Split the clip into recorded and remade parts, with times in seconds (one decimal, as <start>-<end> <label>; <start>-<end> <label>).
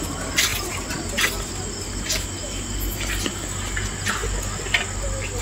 0.0-5.4 recorded